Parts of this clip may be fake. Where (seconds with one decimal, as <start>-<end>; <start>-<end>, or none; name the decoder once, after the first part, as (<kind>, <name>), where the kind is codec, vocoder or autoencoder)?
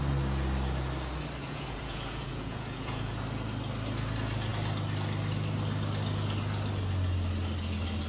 1.4-3.2 (vocoder, Vocos)